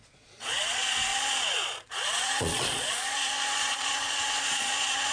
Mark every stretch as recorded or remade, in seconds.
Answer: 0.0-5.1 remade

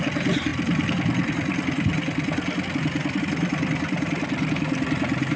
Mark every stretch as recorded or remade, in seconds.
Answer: 0.0-5.4 recorded

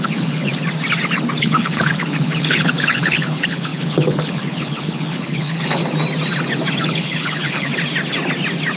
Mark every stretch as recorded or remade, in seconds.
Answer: 0.0-0.5 remade; 0.5-1.4 recorded; 1.4-5.8 remade; 5.8-6.8 recorded; 6.8-7.7 remade; 7.7-8.8 recorded

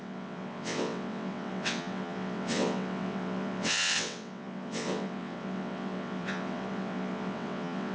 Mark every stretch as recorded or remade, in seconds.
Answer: 0.0-7.9 remade

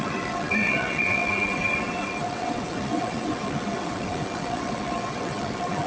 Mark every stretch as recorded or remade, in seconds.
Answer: 0.0-5.9 remade

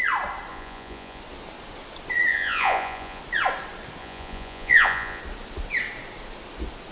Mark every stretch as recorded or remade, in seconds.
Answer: 0.0-0.5 recorded; 0.5-1.2 remade; 1.2-2.3 recorded; 2.3-3.2 remade; 3.2-4.0 recorded; 4.0-5.2 remade; 5.2-6.9 recorded

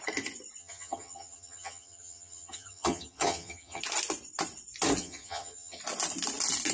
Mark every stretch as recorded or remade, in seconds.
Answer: 0.0-0.6 recorded; 0.6-3.8 remade; 3.8-5.0 recorded; 5.0-5.8 remade; 5.8-6.7 recorded

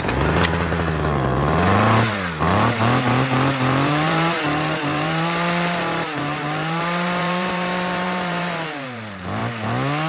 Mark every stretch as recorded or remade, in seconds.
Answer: 0.0-9.4 remade; 9.4-10.1 recorded